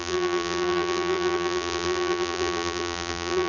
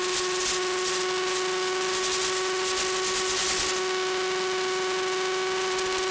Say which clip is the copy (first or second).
first